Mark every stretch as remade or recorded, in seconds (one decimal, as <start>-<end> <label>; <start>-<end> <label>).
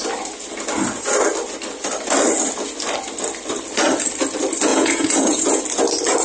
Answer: 0.0-4.7 recorded; 4.7-5.6 remade; 5.6-6.2 recorded